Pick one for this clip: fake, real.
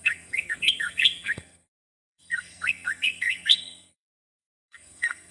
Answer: fake